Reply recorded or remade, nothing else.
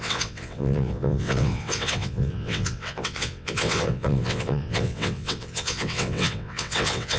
remade